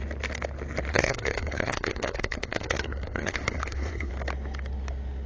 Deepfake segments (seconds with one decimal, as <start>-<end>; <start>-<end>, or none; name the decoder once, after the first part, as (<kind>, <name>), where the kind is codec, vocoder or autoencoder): 0.9-4.1 (codec, SNAC)